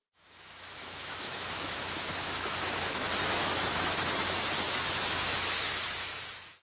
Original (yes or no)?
no